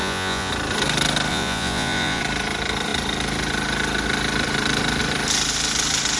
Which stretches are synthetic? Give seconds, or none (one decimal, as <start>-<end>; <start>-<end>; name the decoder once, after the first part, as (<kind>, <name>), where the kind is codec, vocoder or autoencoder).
0.0-0.5 (vocoder, Vocos); 1.3-2.2